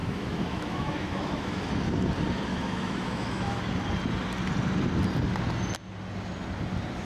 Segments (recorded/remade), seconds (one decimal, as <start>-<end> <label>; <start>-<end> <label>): 0.0-1.7 remade; 1.7-2.5 recorded; 2.5-3.6 remade; 3.6-7.0 recorded